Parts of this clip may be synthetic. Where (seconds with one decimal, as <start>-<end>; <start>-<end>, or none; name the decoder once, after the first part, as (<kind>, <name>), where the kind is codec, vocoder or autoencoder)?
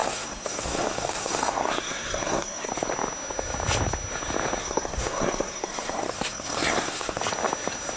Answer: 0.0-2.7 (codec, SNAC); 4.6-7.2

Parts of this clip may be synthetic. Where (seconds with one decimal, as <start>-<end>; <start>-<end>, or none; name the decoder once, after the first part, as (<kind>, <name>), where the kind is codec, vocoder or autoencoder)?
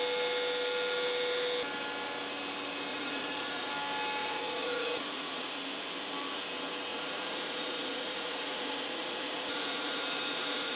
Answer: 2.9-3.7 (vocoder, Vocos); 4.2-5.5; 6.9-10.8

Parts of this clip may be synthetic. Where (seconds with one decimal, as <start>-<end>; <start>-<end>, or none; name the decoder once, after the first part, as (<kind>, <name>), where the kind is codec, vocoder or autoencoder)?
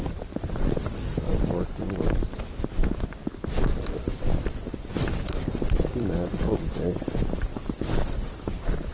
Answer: 1.3-2.4 (vocoder, BigVGAN v2); 3.2-8.1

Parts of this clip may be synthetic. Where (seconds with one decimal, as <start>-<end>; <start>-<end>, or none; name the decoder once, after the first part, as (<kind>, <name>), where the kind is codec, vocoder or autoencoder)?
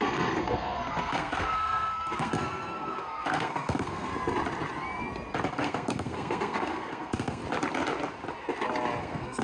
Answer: 0.0-4.1 (codec, SNAC); 5.5-7.4; 9.0-9.4